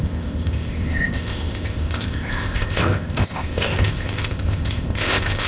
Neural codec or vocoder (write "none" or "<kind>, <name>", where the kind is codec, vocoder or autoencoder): codec, ZipCodec